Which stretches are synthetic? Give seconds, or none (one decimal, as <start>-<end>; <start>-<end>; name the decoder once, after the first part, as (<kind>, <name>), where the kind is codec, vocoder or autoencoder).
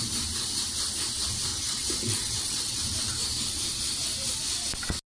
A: 1.5-2.8 (vocoder, WaveNeXt)